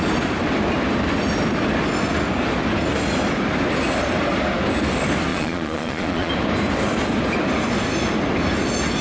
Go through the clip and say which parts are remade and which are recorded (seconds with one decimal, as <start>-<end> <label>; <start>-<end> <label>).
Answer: 0.0-5.3 recorded; 5.3-6.3 remade; 6.3-9.0 recorded